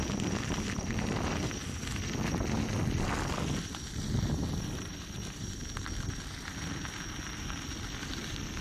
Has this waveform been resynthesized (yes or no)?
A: no